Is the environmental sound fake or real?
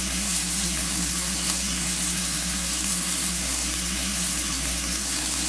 fake